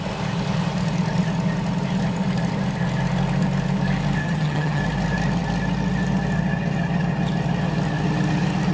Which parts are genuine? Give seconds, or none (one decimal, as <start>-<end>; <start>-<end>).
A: 0.0-4.2; 4.8-8.7